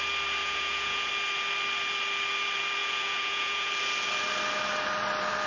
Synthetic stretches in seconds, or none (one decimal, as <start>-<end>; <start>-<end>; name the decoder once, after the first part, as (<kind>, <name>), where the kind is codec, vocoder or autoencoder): 0.4-1.1 (vocoder, Vocos); 2.8-3.7